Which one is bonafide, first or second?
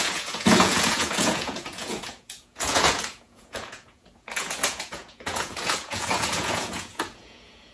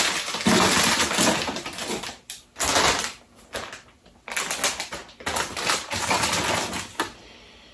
second